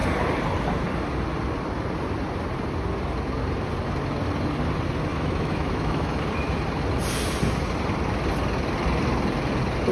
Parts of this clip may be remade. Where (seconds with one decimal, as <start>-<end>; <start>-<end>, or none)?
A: 5.1-6.2